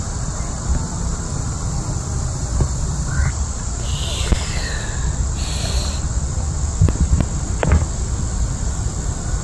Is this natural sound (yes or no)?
yes